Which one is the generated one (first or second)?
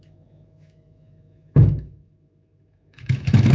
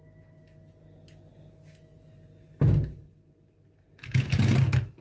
first